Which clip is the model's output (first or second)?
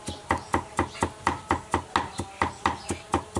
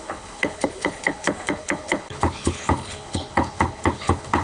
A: second